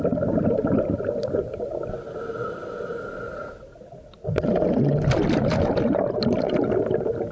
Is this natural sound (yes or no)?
yes